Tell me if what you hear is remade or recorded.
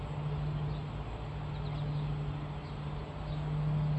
recorded